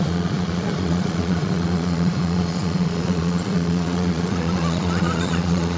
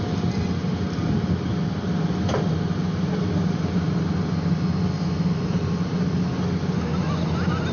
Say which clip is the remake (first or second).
first